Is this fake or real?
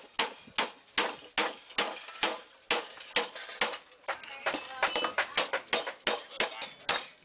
real